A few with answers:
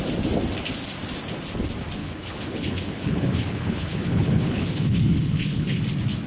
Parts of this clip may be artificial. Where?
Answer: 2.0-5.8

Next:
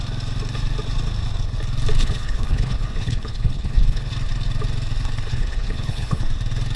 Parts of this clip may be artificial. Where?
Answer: 2.0-4.1; 5.3-6.2

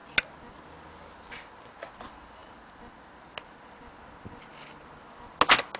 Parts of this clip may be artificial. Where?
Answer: none

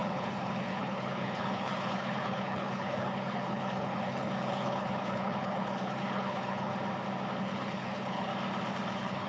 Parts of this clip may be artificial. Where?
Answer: 0.0-6.7; 7.4-8.3; 8.9-9.3